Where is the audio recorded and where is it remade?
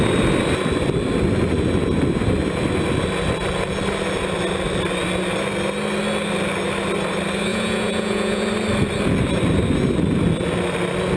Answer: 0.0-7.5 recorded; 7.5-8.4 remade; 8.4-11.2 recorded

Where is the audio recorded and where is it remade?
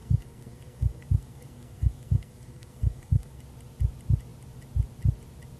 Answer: 0.0-3.4 remade; 3.4-5.6 recorded